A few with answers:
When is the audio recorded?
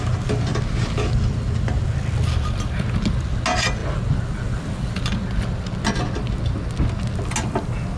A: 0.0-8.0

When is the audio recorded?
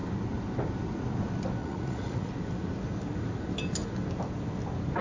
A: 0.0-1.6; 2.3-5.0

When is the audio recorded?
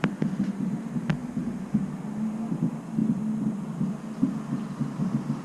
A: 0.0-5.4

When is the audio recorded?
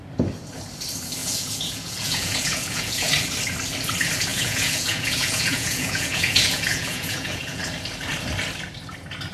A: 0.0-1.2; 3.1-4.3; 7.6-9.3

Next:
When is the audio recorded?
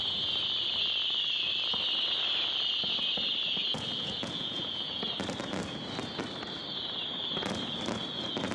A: 0.0-3.7; 5.0-8.5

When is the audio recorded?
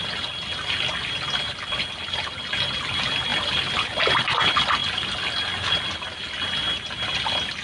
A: 0.0-7.6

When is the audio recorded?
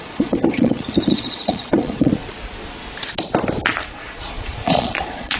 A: 2.1-3.9